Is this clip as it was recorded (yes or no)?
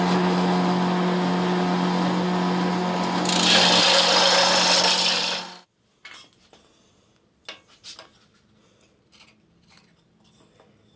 yes